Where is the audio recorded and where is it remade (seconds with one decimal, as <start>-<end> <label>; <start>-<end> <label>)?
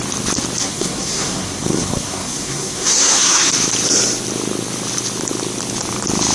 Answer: 0.0-0.6 recorded; 0.6-3.5 remade; 3.5-6.3 recorded